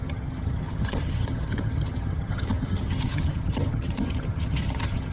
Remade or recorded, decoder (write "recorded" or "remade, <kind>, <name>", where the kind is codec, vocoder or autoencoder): remade, vocoder, HiFi-GAN